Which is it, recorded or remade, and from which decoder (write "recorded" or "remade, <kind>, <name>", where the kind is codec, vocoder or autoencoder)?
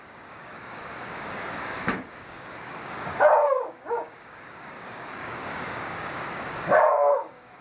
remade, codec, DAC